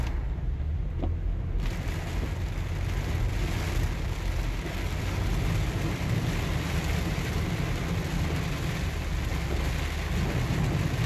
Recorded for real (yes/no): yes